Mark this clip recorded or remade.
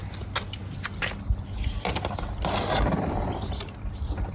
recorded